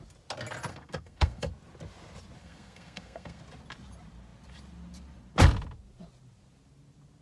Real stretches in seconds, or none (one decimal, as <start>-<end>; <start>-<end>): 0.0-0.7; 1.5-2.4; 3.4-7.2